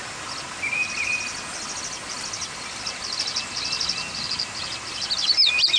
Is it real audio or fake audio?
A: real